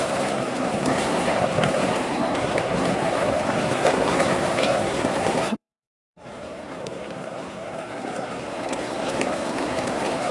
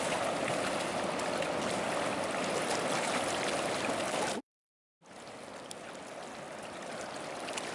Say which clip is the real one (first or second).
second